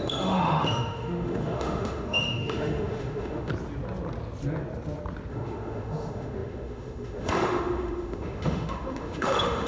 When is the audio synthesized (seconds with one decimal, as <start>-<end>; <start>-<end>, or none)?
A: 0.0-3.5; 5.3-9.7